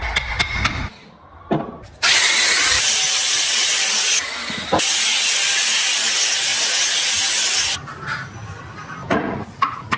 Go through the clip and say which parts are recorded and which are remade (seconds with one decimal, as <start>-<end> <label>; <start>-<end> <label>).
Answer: 0.0-6.5 recorded; 6.5-7.1 remade; 7.1-9.0 recorded; 9.0-10.0 remade